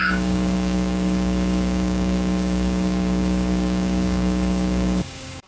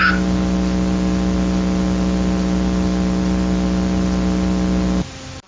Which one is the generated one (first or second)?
first